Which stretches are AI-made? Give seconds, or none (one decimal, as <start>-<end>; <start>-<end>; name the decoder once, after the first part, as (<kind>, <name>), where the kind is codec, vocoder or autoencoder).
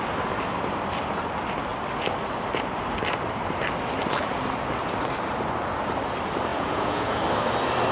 6.5-7.2 (vocoder, Vocos)